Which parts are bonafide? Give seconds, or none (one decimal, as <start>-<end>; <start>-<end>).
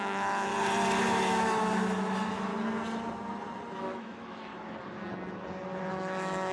0.5-1.0; 2.5-3.8; 4.5-5.9